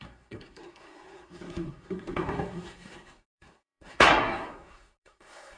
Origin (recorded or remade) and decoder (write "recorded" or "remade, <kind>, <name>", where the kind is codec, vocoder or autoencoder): remade, codec, SNAC